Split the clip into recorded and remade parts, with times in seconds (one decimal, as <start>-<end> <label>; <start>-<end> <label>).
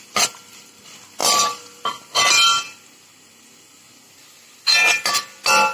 0.0-5.7 recorded